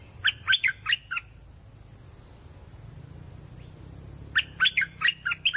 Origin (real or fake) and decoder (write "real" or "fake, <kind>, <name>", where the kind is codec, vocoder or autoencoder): real